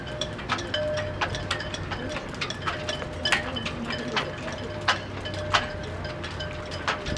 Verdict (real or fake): real